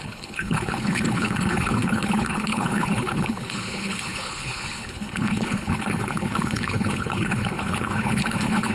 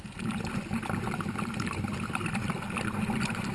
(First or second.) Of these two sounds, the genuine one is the second